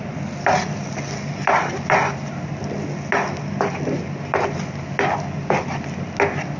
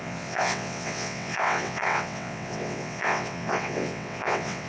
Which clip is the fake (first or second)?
second